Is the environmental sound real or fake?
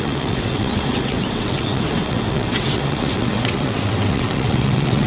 fake